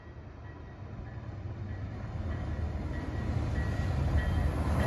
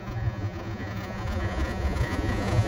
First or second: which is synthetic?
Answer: second